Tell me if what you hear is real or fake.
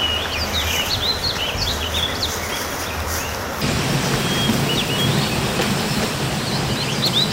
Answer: real